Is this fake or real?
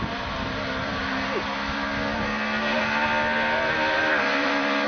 real